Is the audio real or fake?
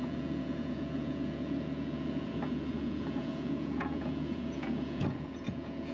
fake